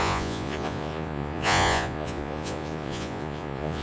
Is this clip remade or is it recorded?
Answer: remade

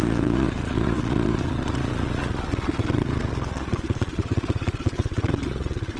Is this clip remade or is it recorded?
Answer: remade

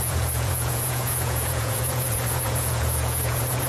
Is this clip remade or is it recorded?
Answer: remade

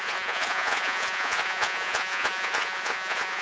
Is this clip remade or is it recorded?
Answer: remade